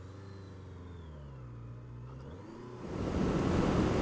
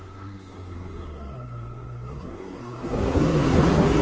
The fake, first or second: second